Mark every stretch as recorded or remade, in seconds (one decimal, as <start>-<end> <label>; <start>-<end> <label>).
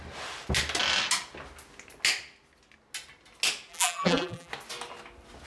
0.0-3.7 recorded; 3.7-4.5 remade; 4.5-5.5 recorded